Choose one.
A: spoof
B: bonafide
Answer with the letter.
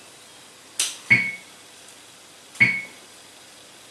B